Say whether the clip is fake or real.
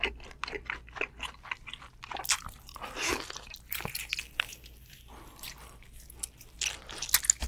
real